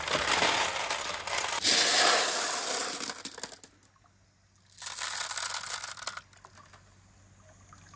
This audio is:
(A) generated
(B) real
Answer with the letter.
B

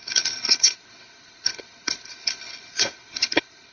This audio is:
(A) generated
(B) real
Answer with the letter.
A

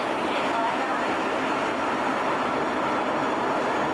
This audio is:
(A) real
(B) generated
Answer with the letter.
A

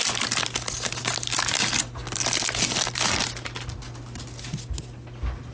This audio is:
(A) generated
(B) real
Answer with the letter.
B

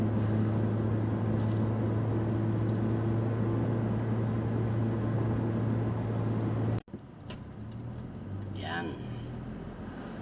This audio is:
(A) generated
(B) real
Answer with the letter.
B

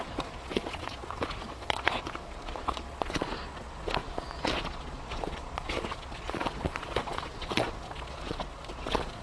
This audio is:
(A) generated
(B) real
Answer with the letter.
A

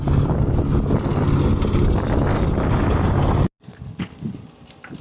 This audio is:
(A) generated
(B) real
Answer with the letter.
B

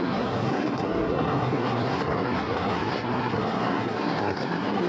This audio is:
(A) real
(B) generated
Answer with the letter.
B